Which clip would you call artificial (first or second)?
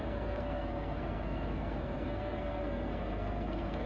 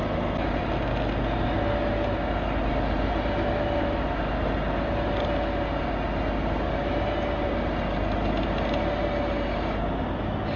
first